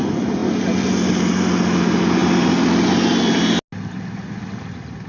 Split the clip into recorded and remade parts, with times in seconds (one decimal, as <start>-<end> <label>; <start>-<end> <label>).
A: 0.0-5.1 recorded